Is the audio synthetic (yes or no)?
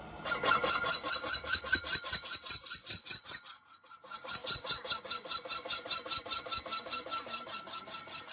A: no